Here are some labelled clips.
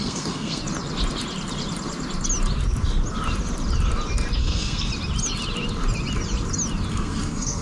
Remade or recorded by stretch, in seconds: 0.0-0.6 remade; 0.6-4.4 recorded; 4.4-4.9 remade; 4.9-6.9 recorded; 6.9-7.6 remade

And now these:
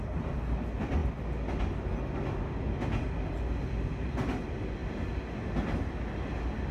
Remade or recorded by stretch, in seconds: 0.0-6.7 recorded

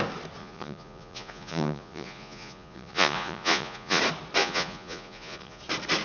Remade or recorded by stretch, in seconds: 0.0-0.4 recorded; 0.4-4.0 remade; 4.0-4.4 recorded; 4.4-5.6 remade; 5.6-6.0 recorded

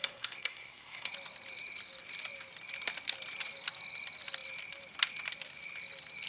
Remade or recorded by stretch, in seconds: 0.0-1.1 remade; 1.1-6.3 recorded

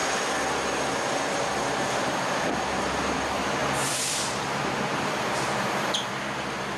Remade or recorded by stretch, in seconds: 0.0-1.0 recorded; 1.0-6.8 remade

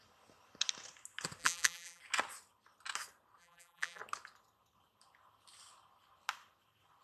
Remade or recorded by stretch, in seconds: 0.0-1.4 recorded; 1.4-2.0 remade; 2.0-3.4 recorded; 3.4-4.0 remade; 4.0-7.0 recorded

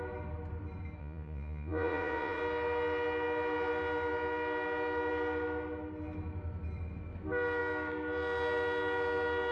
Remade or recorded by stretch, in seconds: 0.0-1.0 recorded; 1.0-2.4 remade; 2.4-9.5 recorded